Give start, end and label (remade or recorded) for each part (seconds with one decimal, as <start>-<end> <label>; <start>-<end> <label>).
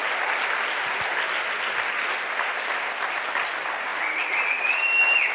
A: 0.0-5.3 recorded